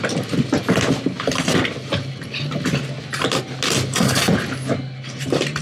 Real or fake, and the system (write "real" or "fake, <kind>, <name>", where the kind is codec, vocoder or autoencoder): real